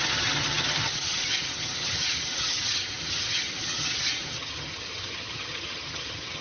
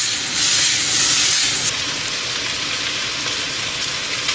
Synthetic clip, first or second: first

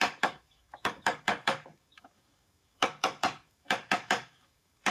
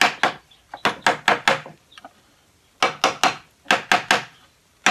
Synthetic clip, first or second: first